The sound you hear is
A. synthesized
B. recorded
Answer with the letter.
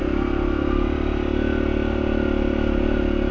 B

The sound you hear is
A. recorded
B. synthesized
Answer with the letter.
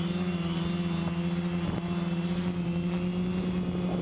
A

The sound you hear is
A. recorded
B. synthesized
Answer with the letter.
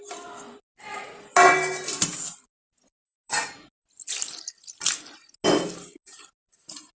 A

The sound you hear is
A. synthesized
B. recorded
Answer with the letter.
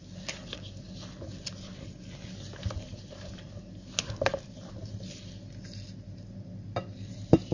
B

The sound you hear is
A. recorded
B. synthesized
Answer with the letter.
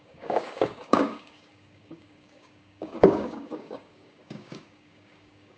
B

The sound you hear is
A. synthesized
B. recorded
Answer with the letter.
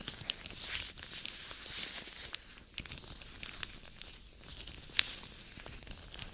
B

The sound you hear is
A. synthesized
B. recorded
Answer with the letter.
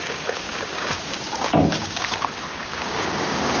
A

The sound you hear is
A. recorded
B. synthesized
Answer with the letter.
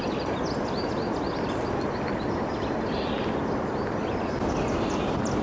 A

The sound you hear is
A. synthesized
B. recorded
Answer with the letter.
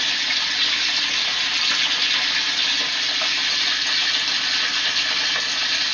B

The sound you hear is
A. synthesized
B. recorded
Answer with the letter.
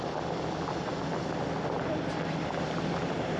B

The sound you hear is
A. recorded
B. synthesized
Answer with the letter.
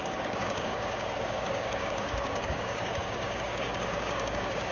B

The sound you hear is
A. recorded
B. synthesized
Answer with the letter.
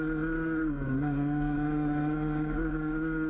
B